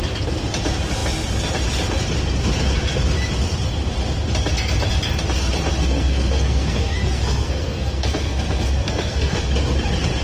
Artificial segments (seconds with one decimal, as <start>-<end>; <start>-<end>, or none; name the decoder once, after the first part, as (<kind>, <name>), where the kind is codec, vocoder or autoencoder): 5.8-9.4 (codec, SNAC)